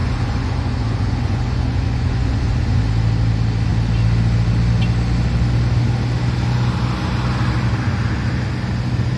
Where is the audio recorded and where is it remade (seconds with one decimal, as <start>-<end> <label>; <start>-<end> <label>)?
0.0-2.8 remade; 2.8-9.2 recorded